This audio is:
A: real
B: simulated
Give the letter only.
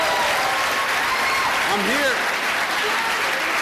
A